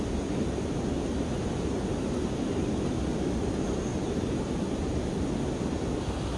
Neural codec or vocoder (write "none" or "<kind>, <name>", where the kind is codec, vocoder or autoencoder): none